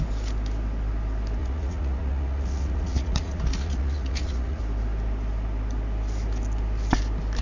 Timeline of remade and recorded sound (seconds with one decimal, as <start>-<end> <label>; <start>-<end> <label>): 0.0-1.4 recorded; 1.4-4.6 remade; 4.6-7.4 recorded